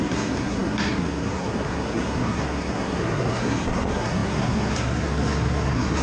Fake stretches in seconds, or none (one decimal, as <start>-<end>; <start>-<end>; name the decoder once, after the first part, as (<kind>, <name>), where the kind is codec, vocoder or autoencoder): 0.0-6.0 (codec, SNAC)